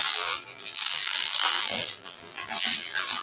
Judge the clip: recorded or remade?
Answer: remade